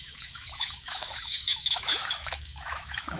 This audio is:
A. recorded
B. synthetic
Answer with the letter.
B